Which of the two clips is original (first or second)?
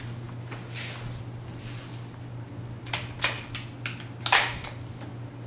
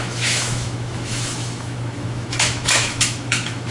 first